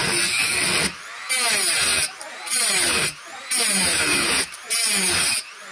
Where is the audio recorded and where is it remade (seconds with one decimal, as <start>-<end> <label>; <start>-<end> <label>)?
0.0-1.9 recorded; 1.9-5.3 remade; 5.3-5.7 recorded